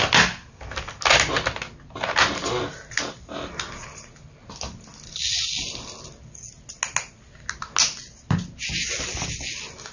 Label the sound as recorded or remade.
recorded